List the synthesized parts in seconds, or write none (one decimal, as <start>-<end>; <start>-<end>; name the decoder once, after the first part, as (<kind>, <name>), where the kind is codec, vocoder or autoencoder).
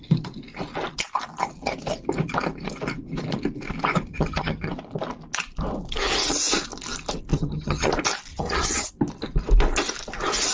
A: 4.1-4.7 (vocoder, HiFi-GAN); 7.3-7.9; 8.3-8.9